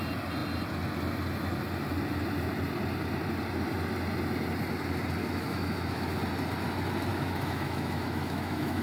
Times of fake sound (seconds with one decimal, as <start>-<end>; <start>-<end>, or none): 5.2-6.2; 7.1-8.8